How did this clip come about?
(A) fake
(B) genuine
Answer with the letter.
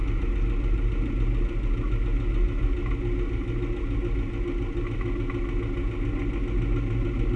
B